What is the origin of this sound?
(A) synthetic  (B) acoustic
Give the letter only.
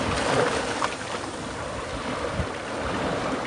B